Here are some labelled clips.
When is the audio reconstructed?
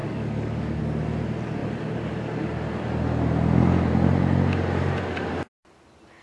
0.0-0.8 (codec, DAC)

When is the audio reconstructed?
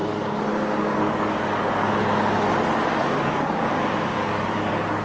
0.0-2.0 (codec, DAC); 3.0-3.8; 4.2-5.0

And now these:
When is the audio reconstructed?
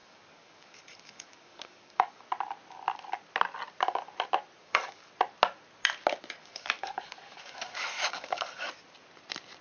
0.0-2.2 (codec, DAC); 4.6-5.1; 6.4-8.7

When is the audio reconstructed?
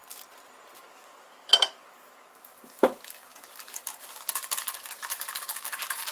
0.8-6.1 (codec, DAC)